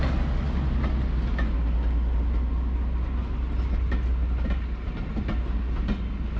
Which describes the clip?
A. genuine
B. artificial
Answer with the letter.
A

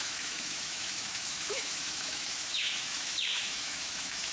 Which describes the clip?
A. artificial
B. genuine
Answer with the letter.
A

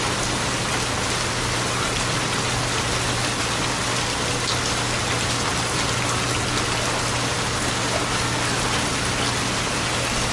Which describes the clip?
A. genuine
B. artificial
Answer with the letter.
A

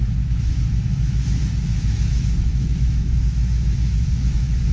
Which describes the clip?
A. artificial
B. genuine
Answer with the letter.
A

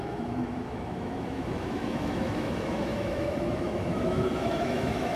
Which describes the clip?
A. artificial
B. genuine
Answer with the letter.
A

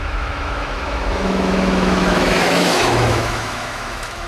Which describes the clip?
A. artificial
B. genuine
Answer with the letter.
A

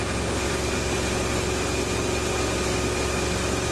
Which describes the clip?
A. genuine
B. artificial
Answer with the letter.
A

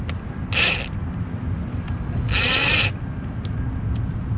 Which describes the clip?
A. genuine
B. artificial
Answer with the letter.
A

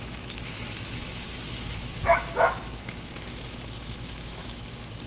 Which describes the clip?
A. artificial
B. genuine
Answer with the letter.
A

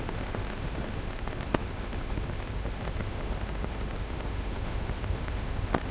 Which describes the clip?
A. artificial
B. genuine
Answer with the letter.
A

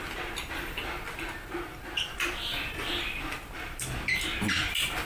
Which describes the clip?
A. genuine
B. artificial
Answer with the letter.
A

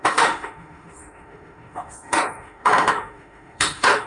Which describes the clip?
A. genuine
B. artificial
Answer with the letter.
B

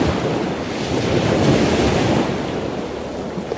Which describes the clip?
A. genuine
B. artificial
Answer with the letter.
A